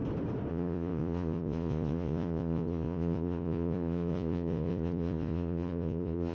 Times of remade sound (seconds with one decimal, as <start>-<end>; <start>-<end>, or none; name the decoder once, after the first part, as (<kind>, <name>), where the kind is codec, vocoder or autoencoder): 0.5-6.3 (vocoder, Vocos)